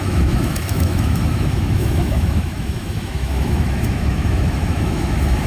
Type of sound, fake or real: fake